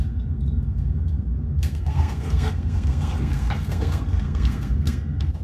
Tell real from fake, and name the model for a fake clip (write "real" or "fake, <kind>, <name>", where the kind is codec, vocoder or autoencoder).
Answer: fake, codec, SNAC